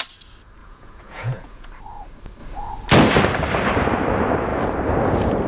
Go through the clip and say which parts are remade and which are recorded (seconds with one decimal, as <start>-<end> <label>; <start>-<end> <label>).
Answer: 0.0-0.6 recorded; 0.6-1.7 remade; 1.7-5.5 recorded